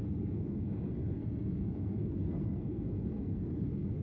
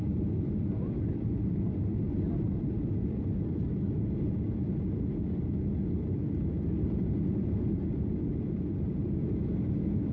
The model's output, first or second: first